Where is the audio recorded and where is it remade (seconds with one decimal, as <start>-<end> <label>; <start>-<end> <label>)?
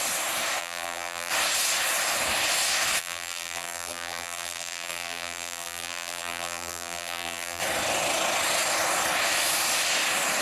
0.0-0.6 recorded; 0.6-1.3 remade; 1.3-3.0 recorded; 3.0-7.6 remade; 7.6-10.4 recorded